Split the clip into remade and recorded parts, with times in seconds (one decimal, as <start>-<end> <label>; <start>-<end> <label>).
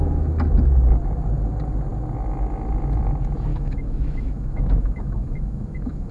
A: 0.0-3.5 recorded; 3.5-6.1 remade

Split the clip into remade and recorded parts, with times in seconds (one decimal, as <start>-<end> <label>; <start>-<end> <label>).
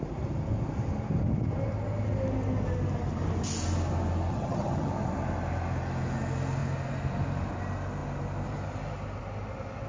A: 0.0-4.3 recorded; 4.3-4.9 remade; 4.9-9.9 recorded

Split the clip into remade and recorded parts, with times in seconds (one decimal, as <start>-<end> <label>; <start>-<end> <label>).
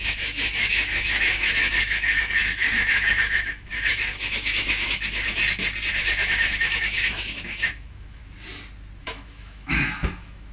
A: 0.0-5.4 remade; 5.4-5.9 recorded; 5.9-8.2 remade; 8.2-9.0 recorded; 9.0-10.5 remade